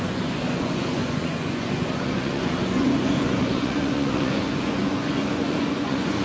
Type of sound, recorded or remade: remade